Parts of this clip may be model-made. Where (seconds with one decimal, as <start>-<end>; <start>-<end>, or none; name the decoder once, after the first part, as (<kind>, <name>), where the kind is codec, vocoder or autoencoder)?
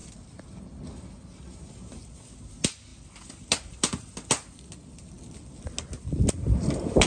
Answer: none